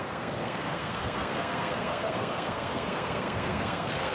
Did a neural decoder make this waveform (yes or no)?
yes